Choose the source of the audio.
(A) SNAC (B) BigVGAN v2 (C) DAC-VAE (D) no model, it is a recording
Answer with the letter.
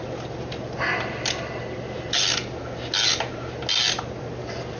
D